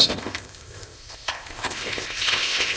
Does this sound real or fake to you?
fake